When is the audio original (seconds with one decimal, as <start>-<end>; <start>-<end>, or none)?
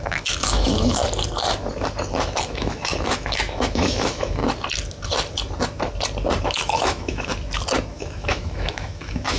1.0-2.2; 4.4-6.4; 7.3-7.9